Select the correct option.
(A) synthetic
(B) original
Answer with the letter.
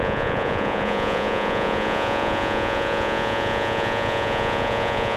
A